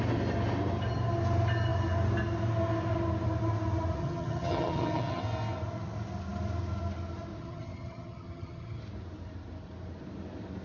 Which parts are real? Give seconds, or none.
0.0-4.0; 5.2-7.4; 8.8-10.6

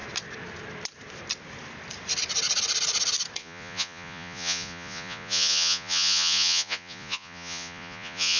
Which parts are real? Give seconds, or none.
0.0-3.4

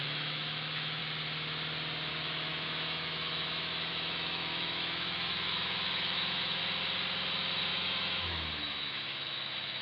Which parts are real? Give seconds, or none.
1.0-2.1; 6.6-7.7

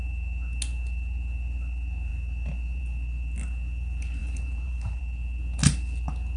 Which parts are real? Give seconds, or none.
0.0-4.2; 5.0-6.4

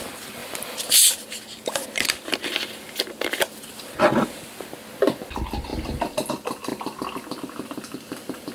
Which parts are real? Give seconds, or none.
0.0-8.5